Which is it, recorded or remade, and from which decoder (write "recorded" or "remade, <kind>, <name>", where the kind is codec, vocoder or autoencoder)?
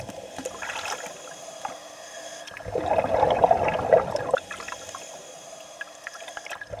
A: recorded